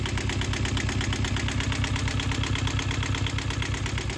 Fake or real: real